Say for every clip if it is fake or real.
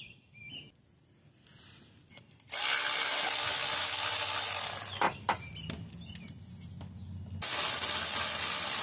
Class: real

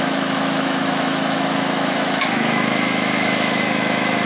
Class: fake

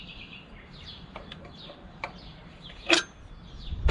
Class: fake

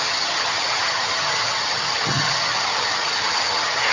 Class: fake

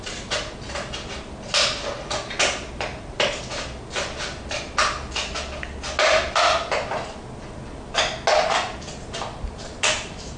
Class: real